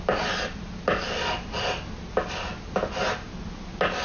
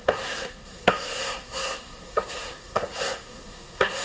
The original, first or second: first